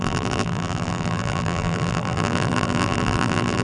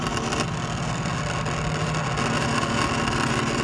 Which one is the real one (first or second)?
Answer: second